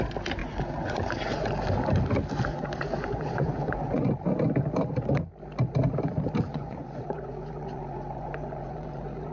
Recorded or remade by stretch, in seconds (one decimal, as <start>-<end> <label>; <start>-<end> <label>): 0.0-0.4 recorded; 0.4-1.5 remade; 1.5-2.5 recorded; 2.5-4.1 remade; 4.1-6.5 recorded; 6.5-9.3 remade